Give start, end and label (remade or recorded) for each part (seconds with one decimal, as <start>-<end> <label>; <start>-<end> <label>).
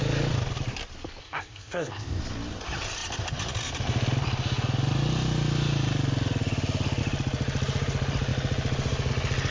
0.0-1.2 recorded; 1.2-2.2 remade; 2.2-9.5 recorded